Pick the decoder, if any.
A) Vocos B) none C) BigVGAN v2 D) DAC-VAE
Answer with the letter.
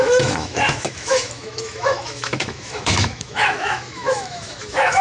D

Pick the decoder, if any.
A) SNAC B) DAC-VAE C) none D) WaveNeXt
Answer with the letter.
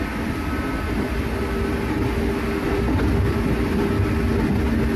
C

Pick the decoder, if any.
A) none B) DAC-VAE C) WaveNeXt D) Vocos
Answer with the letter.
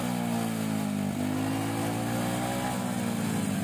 A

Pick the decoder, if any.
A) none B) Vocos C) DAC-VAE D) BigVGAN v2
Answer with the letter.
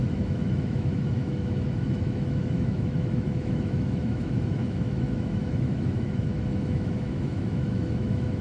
C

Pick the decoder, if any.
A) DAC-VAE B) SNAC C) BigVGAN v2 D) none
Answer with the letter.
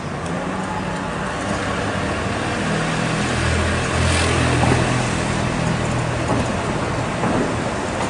D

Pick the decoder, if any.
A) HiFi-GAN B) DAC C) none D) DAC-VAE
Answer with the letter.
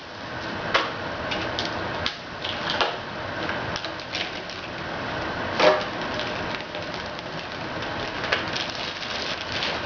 C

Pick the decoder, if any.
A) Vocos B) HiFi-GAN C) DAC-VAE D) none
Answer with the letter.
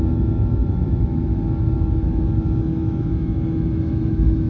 C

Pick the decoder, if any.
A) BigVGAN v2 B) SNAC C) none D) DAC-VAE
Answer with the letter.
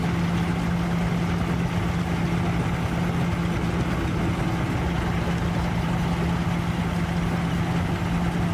C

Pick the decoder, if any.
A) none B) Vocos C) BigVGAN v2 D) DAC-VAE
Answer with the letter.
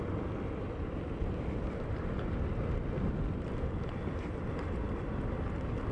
A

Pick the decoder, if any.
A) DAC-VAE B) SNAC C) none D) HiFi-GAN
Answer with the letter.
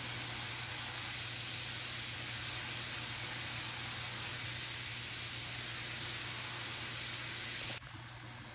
C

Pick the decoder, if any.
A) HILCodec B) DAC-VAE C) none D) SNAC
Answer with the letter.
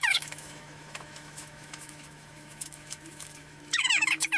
B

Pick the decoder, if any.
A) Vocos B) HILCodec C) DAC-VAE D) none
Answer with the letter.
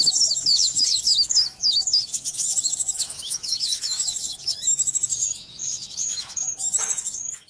C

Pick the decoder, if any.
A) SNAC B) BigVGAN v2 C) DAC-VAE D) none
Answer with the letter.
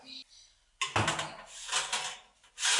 D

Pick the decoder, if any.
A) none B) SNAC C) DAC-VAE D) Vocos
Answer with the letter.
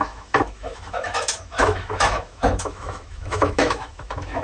C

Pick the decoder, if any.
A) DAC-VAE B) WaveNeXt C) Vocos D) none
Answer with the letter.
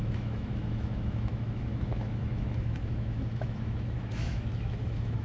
A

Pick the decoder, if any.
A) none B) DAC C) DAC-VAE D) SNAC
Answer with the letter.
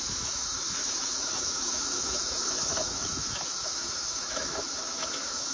C